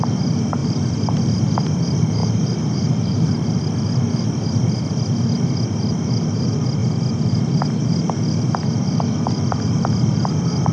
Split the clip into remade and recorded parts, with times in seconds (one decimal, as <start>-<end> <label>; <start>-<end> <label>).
0.0-2.2 recorded; 2.2-3.3 remade; 3.3-10.7 recorded